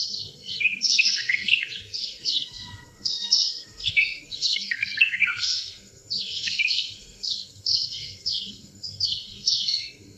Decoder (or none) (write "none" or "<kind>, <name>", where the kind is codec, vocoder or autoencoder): codec, SNAC